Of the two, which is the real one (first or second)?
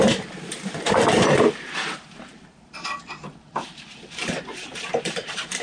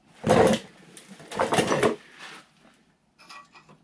second